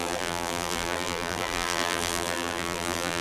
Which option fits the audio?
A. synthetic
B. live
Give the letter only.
A